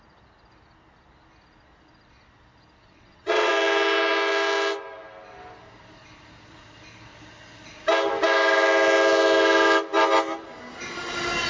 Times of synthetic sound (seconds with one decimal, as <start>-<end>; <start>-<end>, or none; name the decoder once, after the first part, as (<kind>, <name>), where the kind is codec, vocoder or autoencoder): 2.8-3.5 (vocoder, WaveNeXt)